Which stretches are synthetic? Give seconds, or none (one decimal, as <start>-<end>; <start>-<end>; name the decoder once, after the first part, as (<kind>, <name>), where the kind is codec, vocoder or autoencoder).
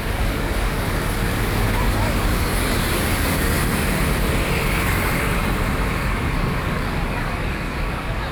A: 0.0-3.6 (codec, DAC); 4.6-5.4; 6.0-8.3